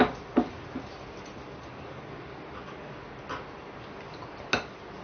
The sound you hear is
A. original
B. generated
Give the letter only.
A